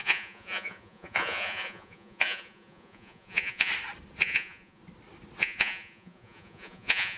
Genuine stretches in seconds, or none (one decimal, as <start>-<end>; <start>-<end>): 3.7-4.2; 4.8-5.4